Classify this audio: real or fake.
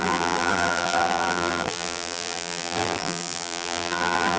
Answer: fake